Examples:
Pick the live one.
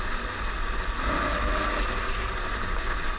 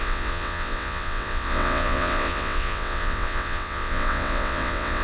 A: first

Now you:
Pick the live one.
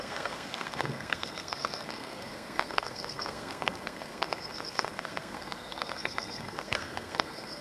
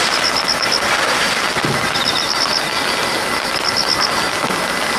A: second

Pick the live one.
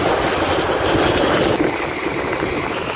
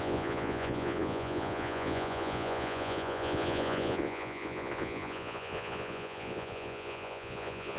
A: first